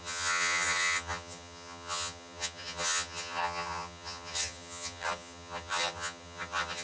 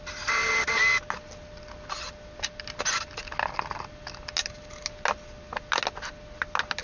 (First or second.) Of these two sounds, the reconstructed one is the first